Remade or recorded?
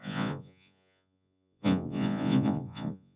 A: remade